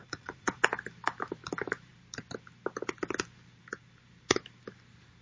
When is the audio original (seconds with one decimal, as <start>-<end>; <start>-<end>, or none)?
0.6-5.2